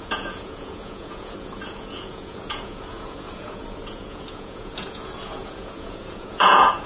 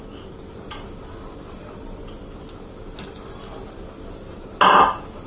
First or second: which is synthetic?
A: first